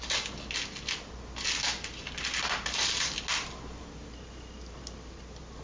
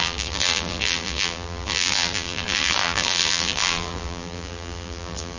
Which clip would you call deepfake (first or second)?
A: second